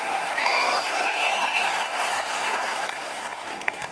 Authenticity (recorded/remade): remade